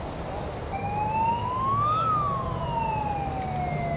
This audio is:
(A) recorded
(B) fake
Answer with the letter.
A